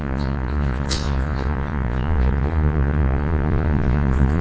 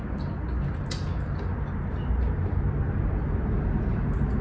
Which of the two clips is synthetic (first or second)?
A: first